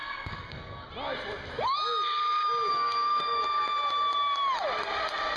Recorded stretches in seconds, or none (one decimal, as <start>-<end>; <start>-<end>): 0.9-2.7; 3.4-5.4